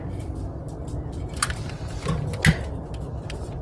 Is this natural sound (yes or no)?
yes